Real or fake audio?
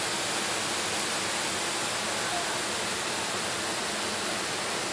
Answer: real